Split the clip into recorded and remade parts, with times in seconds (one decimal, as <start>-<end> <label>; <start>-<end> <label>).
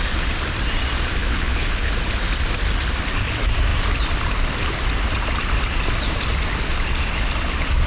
0.0-1.2 recorded; 1.2-1.9 remade; 1.9-7.9 recorded